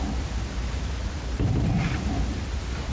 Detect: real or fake real